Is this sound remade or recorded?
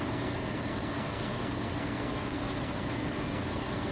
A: remade